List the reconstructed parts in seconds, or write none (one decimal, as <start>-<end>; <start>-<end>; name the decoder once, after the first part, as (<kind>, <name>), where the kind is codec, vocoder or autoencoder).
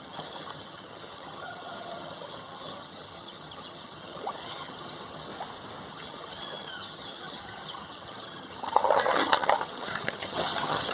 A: 0.0-5.3 (vocoder, HiFi-GAN); 5.9-10.9